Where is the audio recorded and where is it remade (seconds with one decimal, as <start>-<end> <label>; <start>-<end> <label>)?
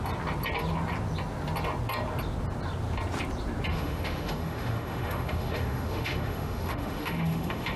0.0-3.7 recorded; 3.7-7.8 remade